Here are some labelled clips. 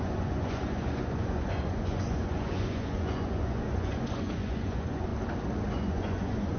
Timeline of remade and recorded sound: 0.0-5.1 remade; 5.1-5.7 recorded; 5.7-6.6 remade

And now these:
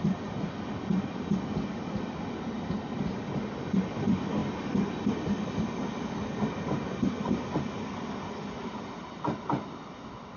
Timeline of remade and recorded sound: 0.0-10.4 recorded

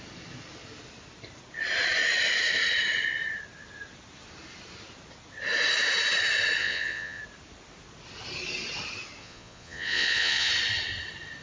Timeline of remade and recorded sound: 0.0-6.6 recorded; 6.6-7.2 remade; 7.2-9.2 recorded; 9.2-10.5 remade; 10.5-11.4 recorded

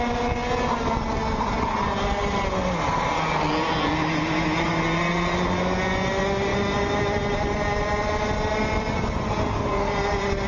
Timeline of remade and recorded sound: 0.0-10.5 recorded

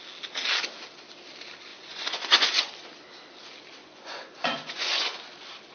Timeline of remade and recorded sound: 0.0-1.7 recorded; 1.7-2.6 remade; 2.6-3.8 recorded; 3.8-5.2 remade; 5.2-5.7 recorded

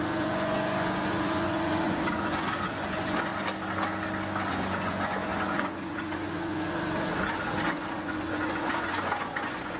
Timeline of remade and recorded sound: 0.0-3.3 remade; 3.3-4.5 recorded; 4.5-9.8 remade

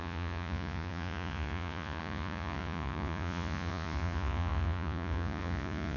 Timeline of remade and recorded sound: 0.0-6.0 remade

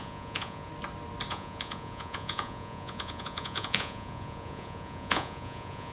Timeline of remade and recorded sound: 0.0-0.7 remade; 0.7-1.3 recorded; 1.3-5.9 remade